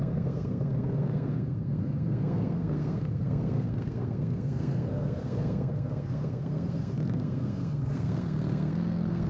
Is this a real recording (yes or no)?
no